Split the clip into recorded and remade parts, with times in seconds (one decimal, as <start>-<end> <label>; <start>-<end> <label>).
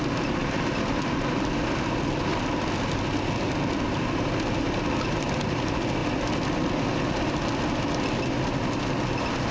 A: 0.0-9.5 recorded